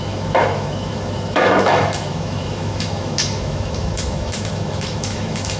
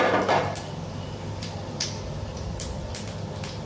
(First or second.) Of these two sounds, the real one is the second